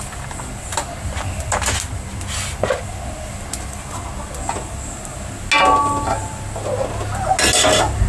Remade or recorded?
recorded